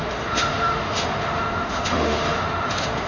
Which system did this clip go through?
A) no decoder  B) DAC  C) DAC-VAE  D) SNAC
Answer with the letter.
C